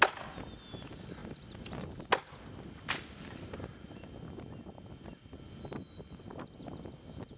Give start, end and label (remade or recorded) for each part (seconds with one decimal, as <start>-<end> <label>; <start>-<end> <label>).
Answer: 0.0-7.4 recorded

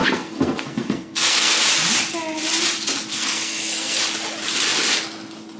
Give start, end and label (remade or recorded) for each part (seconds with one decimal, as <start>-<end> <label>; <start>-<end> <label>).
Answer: 0.0-1.6 remade; 1.6-3.1 recorded; 3.1-4.0 remade; 4.0-5.6 recorded

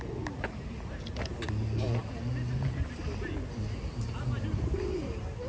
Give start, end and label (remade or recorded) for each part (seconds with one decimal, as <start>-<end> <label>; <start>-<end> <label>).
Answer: 0.0-5.5 recorded

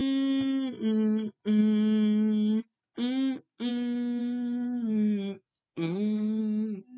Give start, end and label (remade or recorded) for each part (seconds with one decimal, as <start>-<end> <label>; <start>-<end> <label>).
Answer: 0.0-4.2 recorded; 4.2-6.4 remade; 6.4-7.0 recorded

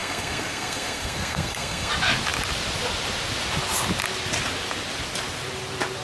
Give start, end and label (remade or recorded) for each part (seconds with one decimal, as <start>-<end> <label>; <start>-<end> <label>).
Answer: 0.0-1.9 remade; 1.9-6.0 recorded

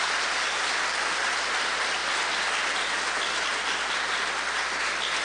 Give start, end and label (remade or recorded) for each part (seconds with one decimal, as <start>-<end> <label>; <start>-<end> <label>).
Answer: 0.0-5.2 recorded